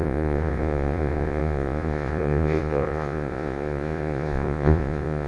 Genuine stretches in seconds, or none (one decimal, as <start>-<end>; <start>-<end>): none